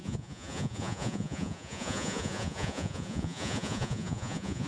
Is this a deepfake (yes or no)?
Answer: yes